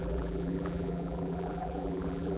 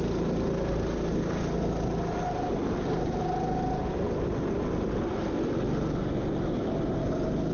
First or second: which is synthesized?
first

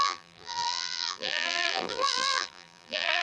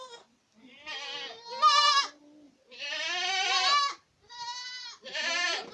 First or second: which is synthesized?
first